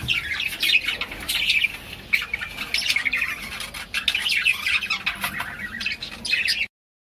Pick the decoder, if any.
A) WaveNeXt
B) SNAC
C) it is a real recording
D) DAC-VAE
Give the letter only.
C